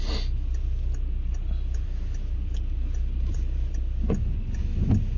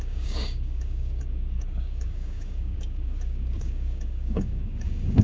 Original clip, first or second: first